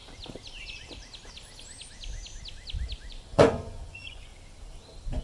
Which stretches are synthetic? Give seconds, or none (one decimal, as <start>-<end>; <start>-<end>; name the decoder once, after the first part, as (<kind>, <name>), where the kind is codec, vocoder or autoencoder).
3.1-4.3 (vocoder, Vocos)